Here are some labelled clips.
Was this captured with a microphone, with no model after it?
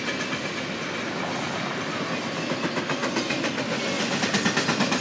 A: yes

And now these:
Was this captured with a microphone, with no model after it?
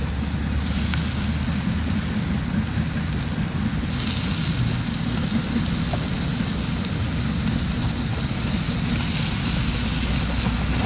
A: yes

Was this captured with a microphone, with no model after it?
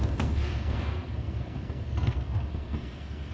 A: no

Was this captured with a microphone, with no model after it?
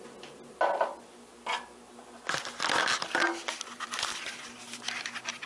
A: yes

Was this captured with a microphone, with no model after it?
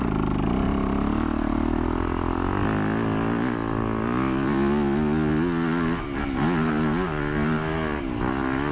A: yes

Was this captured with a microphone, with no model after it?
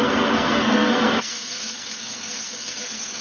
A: no